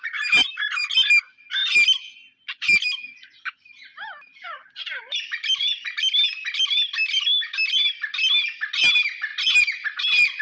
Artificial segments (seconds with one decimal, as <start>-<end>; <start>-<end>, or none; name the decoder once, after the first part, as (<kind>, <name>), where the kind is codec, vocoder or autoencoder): none